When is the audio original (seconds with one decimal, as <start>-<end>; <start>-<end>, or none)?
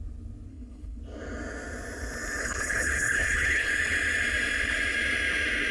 0.0-0.5; 1.0-2.4; 3.7-5.7